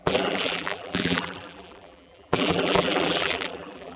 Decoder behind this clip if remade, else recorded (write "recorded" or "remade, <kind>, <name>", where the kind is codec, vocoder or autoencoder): remade, vocoder, BigVGAN v2